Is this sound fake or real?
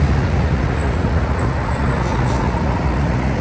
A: fake